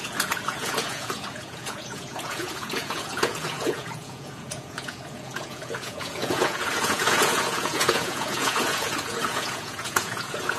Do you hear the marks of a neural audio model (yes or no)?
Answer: yes